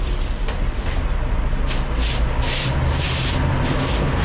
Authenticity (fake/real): real